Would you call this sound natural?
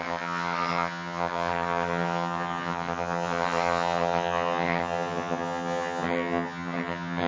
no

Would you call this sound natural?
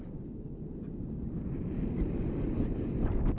yes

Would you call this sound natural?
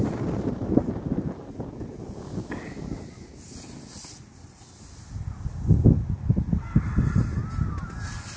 yes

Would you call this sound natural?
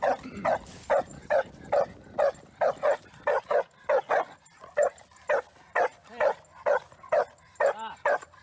yes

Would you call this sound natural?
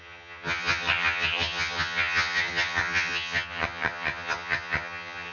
no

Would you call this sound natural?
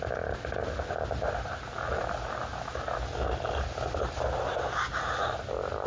yes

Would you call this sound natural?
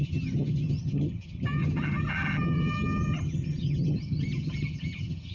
no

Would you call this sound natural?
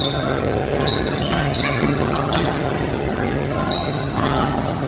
no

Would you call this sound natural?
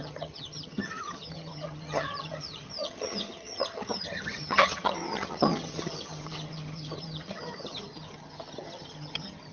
no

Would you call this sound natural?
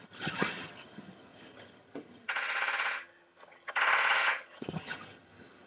no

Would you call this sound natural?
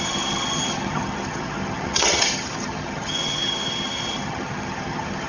no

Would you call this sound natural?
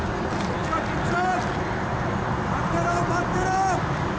yes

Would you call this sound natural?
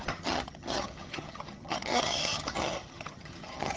no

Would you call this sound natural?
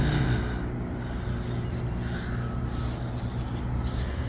yes